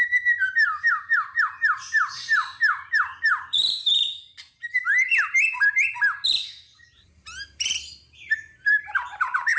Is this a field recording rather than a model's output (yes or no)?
no